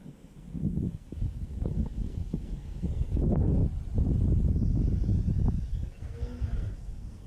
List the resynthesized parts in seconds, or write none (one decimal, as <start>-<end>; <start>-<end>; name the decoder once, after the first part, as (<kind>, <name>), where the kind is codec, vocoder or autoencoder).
0.0-3.6 (codec, SNAC); 5.7-7.3